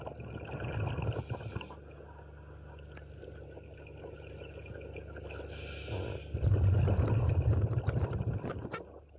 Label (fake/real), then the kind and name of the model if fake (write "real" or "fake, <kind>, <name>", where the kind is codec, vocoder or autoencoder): real